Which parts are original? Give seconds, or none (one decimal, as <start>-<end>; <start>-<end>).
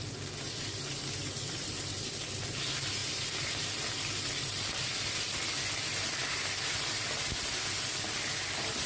0.0-8.9